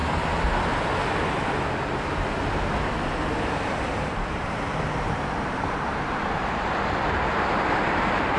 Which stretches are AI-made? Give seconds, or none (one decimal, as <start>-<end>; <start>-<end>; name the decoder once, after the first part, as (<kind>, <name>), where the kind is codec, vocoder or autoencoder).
3.7-6.4 (vocoder, BigVGAN v2); 7.7-8.4